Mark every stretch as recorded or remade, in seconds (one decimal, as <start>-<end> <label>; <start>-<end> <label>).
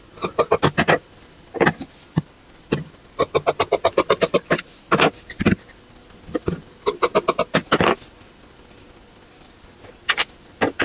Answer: 0.0-10.8 recorded